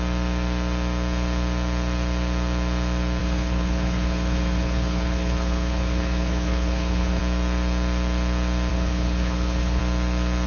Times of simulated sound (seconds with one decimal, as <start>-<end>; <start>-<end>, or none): 3.2-7.2; 8.7-9.8